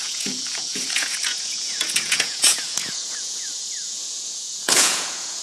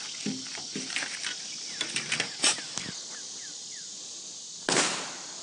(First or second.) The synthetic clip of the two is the first